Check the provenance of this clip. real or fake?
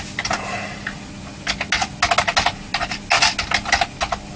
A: real